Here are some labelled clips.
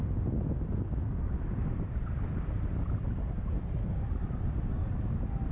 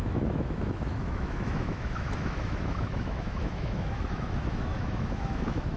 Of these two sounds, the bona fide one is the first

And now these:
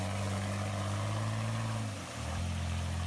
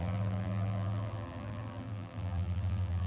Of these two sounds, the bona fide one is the first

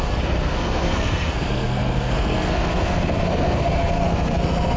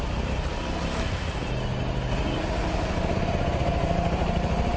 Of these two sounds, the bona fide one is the second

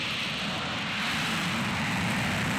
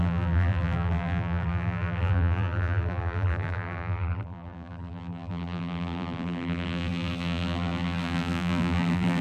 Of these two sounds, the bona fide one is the first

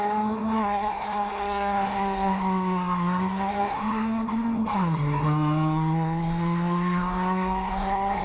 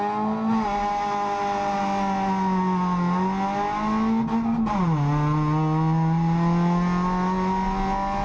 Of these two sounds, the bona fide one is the second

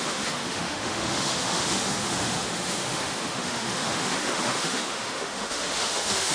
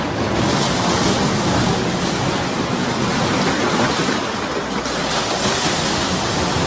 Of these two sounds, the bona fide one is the second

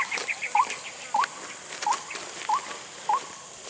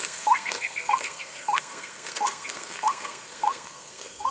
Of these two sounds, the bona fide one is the first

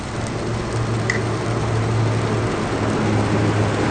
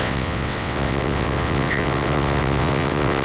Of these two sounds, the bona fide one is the first